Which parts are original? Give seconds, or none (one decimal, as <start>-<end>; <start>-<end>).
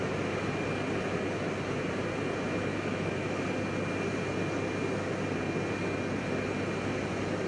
0.0-2.7; 3.4-7.5